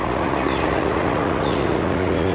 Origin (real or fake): fake